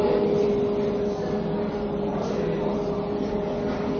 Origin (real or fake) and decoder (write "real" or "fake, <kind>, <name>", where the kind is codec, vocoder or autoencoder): real